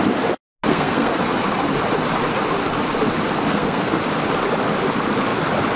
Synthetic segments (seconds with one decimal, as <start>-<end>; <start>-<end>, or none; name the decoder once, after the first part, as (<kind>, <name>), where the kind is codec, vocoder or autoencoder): 0.7-1.2 (codec, SNAC); 3.5-4.0